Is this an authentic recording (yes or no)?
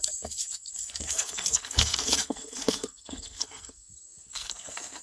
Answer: no